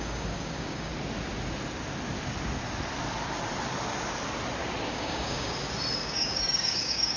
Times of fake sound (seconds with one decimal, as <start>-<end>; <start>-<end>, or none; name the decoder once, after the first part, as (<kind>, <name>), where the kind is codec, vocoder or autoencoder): 0.0-0.9 (codec, DAC); 4.9-5.5; 6.0-7.2